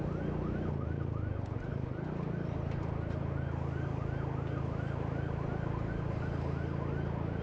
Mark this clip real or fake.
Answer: real